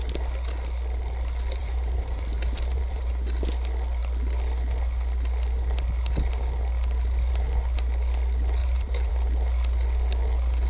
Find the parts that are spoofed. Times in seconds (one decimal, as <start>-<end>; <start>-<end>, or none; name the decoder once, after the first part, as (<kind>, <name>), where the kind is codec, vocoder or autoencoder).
1.6-3.1 (vocoder, BigVGAN v2); 8.6-9.1